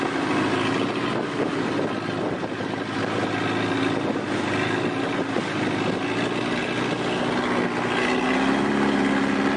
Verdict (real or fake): real